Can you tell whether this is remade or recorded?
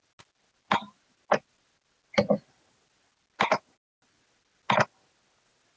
recorded